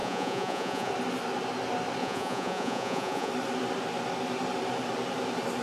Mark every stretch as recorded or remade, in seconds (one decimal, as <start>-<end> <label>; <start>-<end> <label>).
0.0-0.9 remade; 0.9-2.0 recorded; 2.0-3.3 remade; 3.3-5.6 recorded